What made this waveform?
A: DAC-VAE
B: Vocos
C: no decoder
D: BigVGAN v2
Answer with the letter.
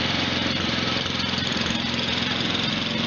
D